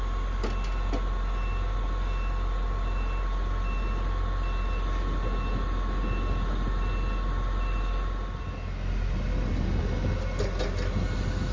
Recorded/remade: recorded